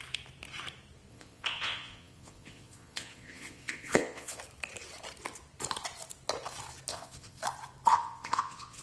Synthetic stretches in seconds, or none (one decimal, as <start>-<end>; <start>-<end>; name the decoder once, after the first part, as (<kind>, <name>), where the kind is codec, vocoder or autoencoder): 1.1-4.4 (vocoder, Vocos); 6.9-7.4; 7.9-8.8